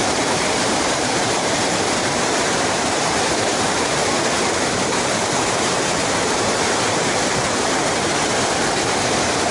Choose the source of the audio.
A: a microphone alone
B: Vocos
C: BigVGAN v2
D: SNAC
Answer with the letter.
C